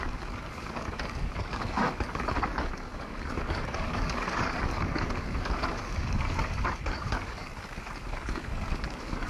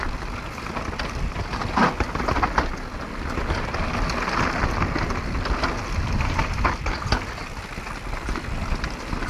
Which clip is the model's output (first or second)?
first